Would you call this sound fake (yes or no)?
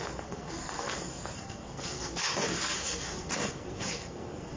yes